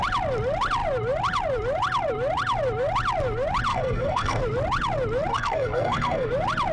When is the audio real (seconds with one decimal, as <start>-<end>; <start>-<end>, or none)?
0.0-3.7; 4.4-5.3; 6.3-6.7